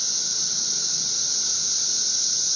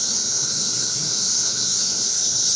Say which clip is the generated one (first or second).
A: second